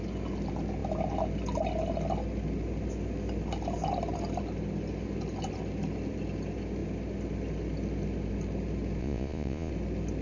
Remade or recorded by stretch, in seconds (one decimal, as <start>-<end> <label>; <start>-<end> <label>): 0.0-9.0 recorded; 9.0-9.7 remade; 9.7-10.2 recorded